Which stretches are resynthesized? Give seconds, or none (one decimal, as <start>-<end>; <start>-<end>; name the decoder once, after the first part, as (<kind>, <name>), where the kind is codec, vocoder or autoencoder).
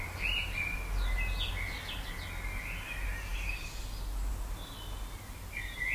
3.3-4.3 (vocoder, BigVGAN v2)